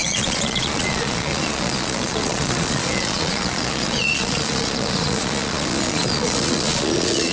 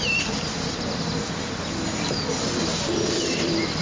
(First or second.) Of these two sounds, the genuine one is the second